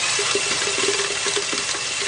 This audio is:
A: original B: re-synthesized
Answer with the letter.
A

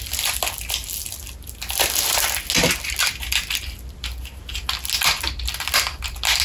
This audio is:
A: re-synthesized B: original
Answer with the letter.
B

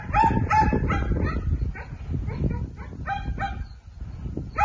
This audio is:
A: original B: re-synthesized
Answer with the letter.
A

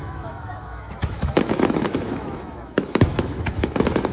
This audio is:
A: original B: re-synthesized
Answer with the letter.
B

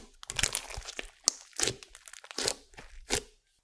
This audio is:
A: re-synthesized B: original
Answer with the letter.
B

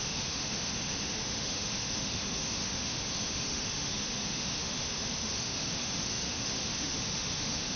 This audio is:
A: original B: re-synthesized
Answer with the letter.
B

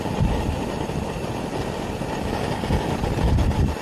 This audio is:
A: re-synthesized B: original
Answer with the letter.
B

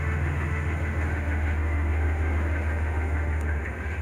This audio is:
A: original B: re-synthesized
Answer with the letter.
B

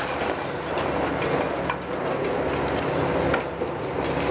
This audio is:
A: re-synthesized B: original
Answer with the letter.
B